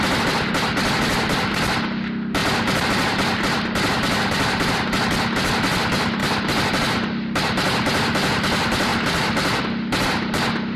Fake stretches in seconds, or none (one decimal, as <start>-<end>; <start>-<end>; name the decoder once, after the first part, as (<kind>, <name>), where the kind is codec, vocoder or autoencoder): 2.4-4.7 (vocoder, BigVGAN v2); 6.2-6.7; 8.9-9.6